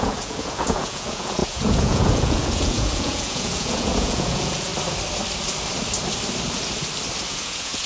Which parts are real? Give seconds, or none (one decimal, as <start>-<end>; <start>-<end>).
4.7-7.3